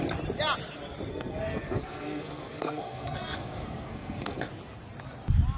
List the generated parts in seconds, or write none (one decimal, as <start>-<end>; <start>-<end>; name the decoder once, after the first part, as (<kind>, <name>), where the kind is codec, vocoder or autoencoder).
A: 1.1-4.5 (codec, SNAC)